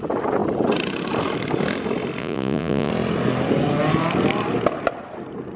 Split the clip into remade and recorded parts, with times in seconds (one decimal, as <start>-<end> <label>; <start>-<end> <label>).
0.0-2.2 recorded; 2.2-2.9 remade; 2.9-5.6 recorded